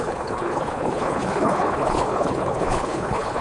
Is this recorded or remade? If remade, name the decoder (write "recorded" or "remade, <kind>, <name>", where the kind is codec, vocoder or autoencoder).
remade, codec, HILCodec